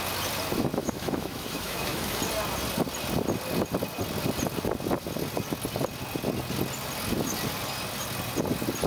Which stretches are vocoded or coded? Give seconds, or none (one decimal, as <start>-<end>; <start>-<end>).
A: 0.8-2.2